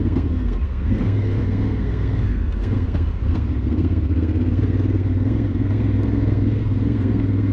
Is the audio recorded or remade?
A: remade